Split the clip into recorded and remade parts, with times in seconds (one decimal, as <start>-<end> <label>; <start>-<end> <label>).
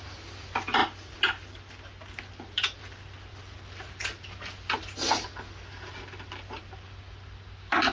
0.0-7.9 recorded